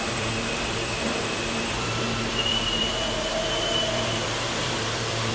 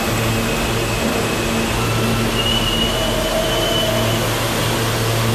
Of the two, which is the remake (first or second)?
first